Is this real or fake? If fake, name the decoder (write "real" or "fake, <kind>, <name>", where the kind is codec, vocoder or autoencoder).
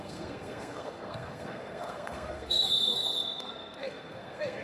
fake, codec, SNAC